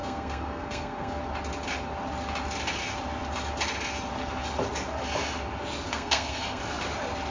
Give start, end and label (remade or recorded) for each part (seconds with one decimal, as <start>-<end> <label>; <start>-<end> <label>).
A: 0.0-1.2 remade; 1.2-5.9 recorded; 5.9-6.6 remade; 6.6-7.3 recorded